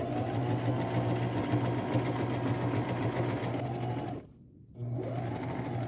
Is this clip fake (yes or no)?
no